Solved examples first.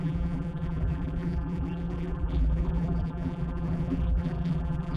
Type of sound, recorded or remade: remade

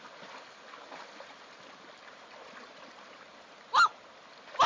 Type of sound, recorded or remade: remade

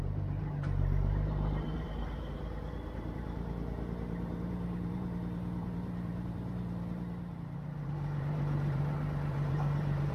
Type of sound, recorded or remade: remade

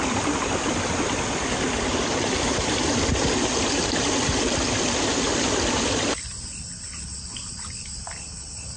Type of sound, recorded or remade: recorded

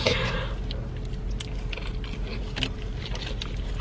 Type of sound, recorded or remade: recorded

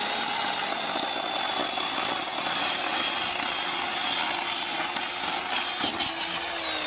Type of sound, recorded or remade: recorded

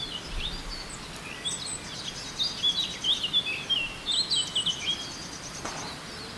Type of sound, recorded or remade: recorded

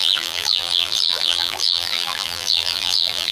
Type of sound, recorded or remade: remade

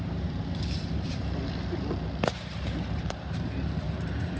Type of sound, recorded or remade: remade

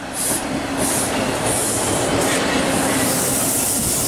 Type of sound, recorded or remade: remade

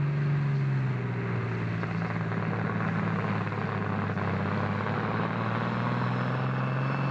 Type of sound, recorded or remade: recorded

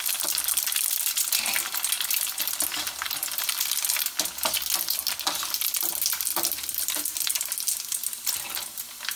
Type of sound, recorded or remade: recorded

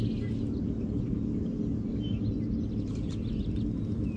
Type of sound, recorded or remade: recorded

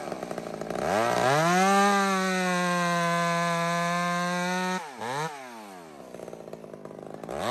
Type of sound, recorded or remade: recorded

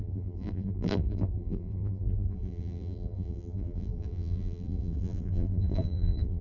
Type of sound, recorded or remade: remade